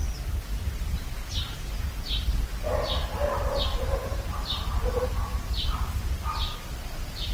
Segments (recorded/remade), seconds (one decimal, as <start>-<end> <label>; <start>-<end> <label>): 0.0-7.3 recorded